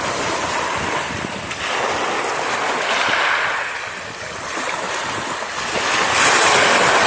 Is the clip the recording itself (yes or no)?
yes